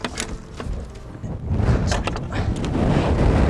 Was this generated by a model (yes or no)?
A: no